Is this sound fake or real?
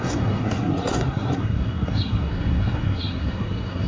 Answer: fake